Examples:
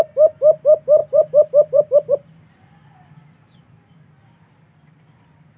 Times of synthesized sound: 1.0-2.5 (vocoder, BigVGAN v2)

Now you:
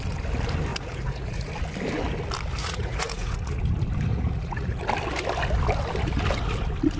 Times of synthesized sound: 0.7-1.5 (vocoder, Vocos); 2.6-3.6; 4.1-4.8